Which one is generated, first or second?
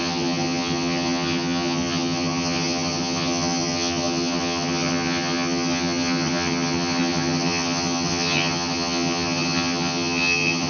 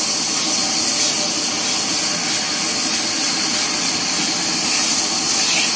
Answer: first